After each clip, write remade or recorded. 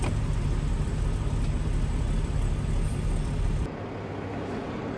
recorded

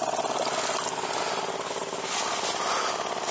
recorded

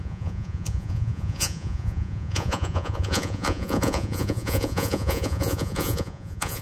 remade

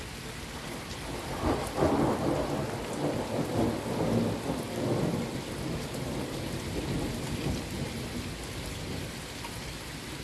recorded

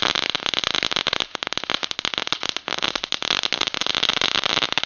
recorded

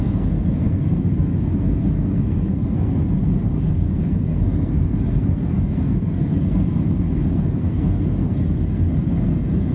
remade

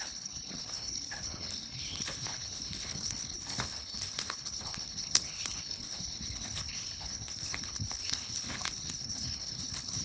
remade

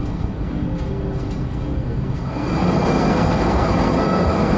remade